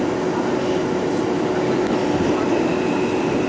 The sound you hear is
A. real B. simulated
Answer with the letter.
A